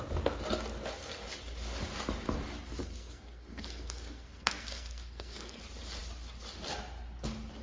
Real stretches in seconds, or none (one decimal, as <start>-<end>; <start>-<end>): 0.0-2.8; 5.6-7.6